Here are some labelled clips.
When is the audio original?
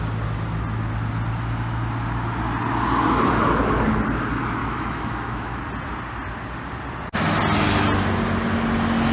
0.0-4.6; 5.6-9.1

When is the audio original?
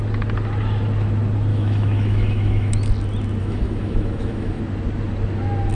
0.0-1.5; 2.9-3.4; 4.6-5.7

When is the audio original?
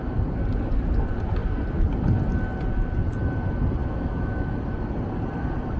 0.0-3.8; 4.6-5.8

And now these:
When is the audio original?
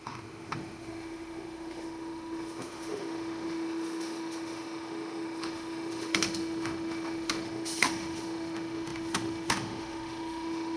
none